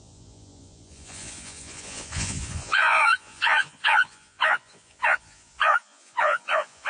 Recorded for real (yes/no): no